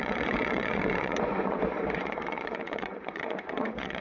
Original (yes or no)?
no